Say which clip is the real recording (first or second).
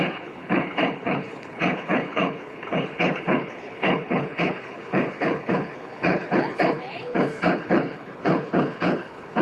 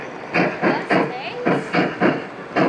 second